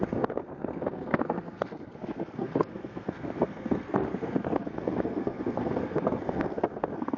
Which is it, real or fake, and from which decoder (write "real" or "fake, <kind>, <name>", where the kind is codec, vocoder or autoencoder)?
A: fake, codec, SNAC